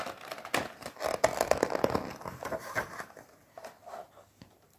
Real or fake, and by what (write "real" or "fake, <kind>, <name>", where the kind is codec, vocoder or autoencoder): real